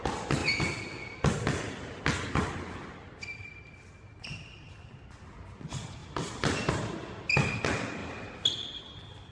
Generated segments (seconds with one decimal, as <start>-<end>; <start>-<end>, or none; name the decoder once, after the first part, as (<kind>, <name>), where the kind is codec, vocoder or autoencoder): 4.6-5.1 (vocoder, BigVGAN v2); 6.0-6.7; 8.0-8.8